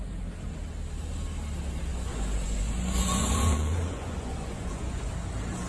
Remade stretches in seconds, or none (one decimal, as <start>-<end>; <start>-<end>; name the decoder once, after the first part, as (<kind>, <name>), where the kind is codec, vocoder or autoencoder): 1.9-5.1 (vocoder, Vocos)